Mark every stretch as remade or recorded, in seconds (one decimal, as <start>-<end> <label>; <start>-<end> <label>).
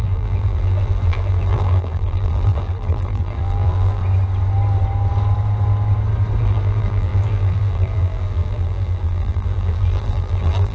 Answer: 0.0-4.0 remade; 4.0-6.4 recorded; 6.4-10.7 remade